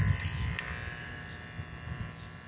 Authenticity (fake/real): real